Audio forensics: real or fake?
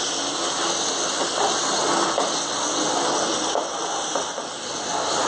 real